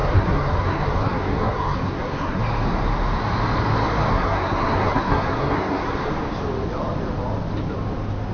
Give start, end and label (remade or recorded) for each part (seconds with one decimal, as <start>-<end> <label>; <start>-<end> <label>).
0.0-2.4 remade; 2.4-4.1 recorded; 4.1-6.1 remade; 6.1-8.3 recorded